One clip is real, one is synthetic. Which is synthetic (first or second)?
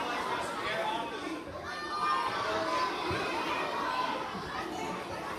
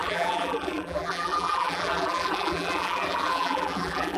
second